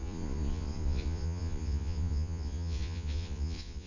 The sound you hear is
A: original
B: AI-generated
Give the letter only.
B